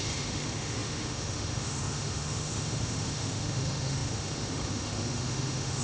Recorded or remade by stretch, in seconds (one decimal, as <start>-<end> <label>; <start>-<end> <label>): 0.0-5.8 remade